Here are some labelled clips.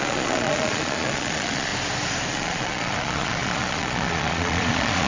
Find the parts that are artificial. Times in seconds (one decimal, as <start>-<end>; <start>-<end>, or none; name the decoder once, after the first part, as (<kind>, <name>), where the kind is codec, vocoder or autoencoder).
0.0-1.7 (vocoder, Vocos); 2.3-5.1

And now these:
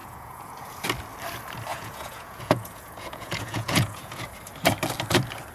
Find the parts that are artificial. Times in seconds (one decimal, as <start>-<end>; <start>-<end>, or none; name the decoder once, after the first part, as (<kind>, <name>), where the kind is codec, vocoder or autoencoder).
0.0-0.8 (vocoder, Vocos); 1.7-4.2

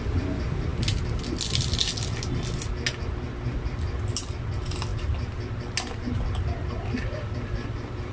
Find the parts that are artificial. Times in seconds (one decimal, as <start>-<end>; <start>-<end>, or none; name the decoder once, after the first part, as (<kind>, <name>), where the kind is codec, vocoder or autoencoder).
none

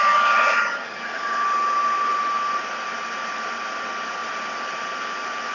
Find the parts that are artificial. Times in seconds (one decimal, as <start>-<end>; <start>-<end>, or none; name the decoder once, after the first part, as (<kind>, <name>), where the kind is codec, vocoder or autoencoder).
none